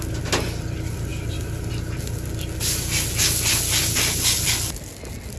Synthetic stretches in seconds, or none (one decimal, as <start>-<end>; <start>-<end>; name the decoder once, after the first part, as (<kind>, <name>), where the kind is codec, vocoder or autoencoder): 1.1-1.7 (vocoder, BigVGAN v2)